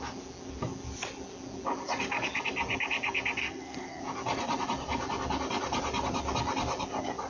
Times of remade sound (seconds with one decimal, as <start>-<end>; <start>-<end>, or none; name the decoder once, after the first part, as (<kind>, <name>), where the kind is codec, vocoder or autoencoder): 3.4-4.0 (codec, SNAC)